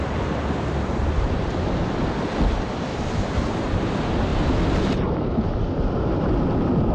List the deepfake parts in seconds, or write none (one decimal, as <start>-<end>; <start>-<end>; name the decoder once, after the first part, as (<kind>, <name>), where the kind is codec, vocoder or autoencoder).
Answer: 0.0-2.9 (vocoder, BigVGAN v2); 3.7-4.3; 6.0-6.9